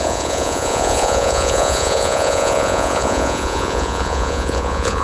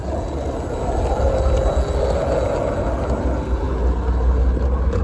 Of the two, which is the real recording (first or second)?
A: second